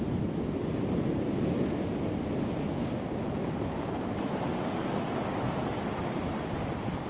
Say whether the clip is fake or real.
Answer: real